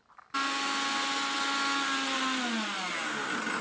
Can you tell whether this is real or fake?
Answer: real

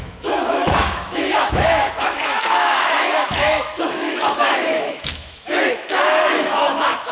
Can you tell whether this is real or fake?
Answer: fake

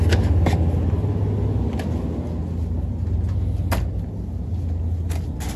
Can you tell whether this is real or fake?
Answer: real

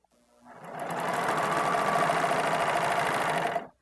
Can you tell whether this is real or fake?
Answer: real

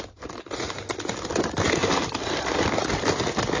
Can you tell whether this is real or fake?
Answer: real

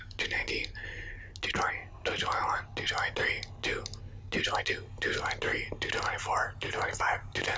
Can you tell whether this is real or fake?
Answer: real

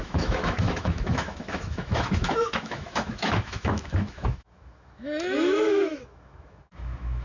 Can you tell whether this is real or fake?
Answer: fake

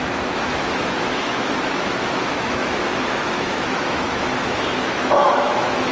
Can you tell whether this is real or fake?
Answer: fake